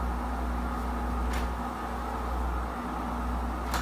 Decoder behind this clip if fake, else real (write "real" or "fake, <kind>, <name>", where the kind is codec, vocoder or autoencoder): real